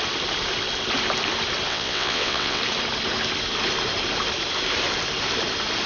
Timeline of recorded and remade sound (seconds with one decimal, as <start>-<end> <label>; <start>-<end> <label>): 0.0-1.7 recorded; 1.7-2.6 remade; 2.6-5.9 recorded